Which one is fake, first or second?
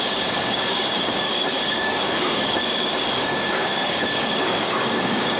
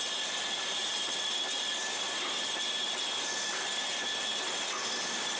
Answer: first